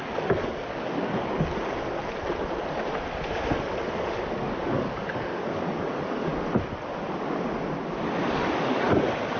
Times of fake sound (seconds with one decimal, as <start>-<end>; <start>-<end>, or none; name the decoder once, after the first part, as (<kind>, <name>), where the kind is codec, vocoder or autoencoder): 0.0-1.8 (codec, DAC); 3.9-6.3; 8.3-9.4